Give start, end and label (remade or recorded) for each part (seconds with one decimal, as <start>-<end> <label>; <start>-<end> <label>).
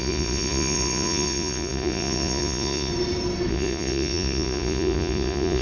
0.0-2.9 remade; 2.9-3.5 recorded; 3.5-5.6 remade